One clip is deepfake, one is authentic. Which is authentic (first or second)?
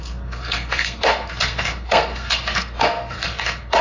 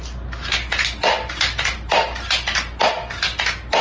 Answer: second